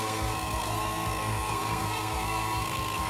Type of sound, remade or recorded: remade